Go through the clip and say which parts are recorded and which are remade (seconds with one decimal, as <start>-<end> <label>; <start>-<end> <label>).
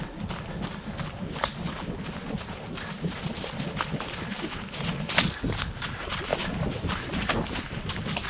0.0-8.3 recorded